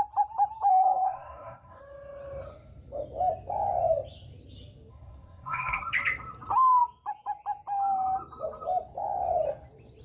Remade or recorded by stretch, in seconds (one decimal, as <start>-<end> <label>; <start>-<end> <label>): 0.0-0.7 recorded; 0.7-1.8 remade; 1.8-4.9 recorded; 4.9-5.8 remade; 5.8-10.0 recorded